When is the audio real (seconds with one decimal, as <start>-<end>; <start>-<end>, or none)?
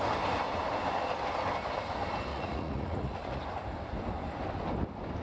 0.0-2.3; 3.4-5.2